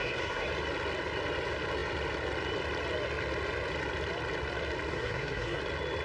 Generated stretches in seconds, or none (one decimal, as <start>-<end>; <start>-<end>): 0.0-0.5; 4.9-5.6